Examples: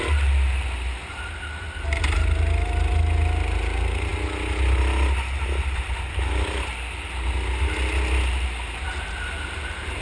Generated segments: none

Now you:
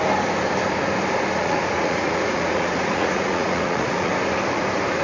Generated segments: 1.4-4.1 (vocoder, Vocos)

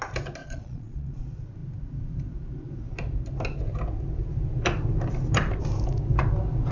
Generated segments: 0.4-1.2 (vocoder, Vocos)

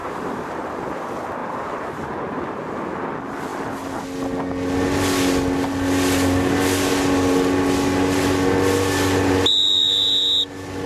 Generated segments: 0.0-0.6 (vocoder, BigVGAN v2); 1.4-2.5

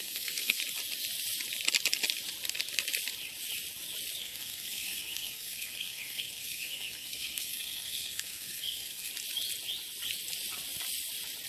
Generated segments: 0.0-0.6 (codec, SNAC); 4.2-9.1

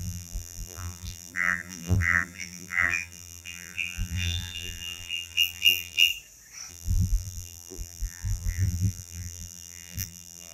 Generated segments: 0.0-6.1 (vocoder, BigVGAN v2); 6.7-10.5